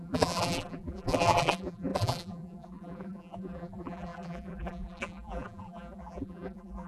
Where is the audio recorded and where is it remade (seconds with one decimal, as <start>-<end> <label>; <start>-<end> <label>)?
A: 0.0-6.9 remade